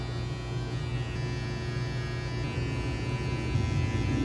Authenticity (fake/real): real